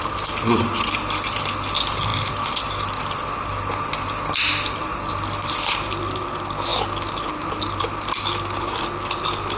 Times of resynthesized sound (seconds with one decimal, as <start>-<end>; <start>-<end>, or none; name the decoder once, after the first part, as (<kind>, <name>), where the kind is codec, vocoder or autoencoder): none

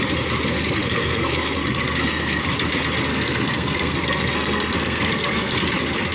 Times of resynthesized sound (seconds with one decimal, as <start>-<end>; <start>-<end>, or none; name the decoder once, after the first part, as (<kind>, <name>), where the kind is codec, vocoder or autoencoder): 0.5-2.4 (codec, SNAC); 3.1-5.6

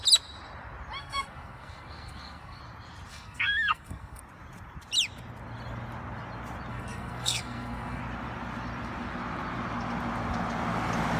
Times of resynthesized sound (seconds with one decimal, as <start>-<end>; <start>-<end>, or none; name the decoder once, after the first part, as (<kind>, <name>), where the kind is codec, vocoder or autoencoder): 1.0-2.6 (codec, SNAC); 3.1-4.2; 6.7-8.0

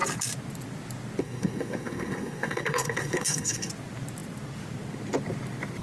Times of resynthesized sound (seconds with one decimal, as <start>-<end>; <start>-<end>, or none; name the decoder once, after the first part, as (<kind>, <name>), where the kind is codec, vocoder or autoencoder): 1.2-3.7 (codec, SNAC)

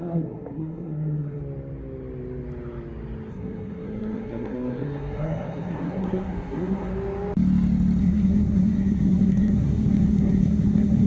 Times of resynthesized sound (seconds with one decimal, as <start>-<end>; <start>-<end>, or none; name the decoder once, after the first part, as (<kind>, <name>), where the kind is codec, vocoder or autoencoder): 0.0-1.4 (codec, SNAC); 3.3-6.9; 8.0-11.1

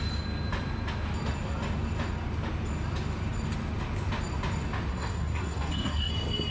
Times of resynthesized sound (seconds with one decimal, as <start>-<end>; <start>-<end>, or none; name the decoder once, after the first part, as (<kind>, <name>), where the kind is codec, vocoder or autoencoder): 4.9-6.1 (codec, SNAC)